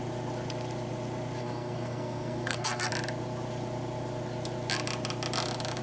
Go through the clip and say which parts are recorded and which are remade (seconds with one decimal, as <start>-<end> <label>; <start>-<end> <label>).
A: 0.0-1.4 recorded; 1.4-2.9 remade; 2.9-5.8 recorded